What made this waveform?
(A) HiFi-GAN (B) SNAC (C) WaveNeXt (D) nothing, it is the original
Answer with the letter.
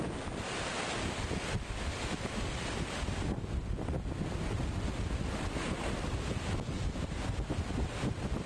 D